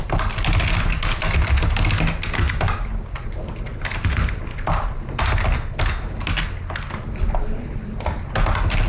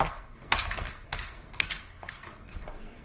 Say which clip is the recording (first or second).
first